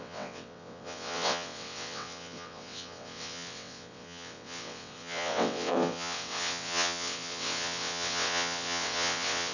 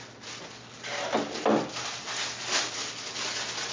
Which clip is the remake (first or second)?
first